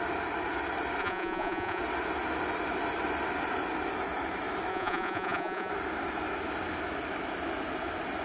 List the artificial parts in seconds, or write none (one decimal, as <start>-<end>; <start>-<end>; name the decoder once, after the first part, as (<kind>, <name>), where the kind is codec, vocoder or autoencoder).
1.0-1.8 (vocoder, Vocos); 4.7-5.7